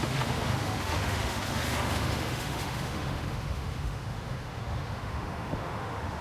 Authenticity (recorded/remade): remade